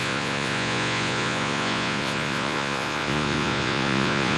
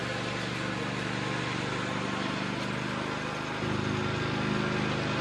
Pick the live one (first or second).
second